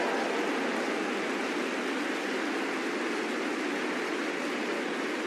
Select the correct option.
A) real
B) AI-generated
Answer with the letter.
A